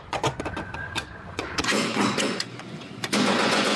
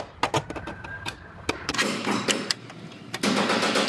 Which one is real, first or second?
second